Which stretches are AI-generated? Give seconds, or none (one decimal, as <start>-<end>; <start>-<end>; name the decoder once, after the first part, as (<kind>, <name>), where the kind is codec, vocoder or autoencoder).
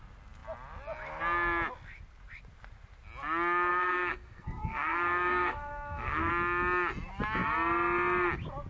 3.7-6.3 (codec, SNAC)